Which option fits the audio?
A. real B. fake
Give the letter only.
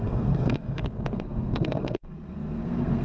B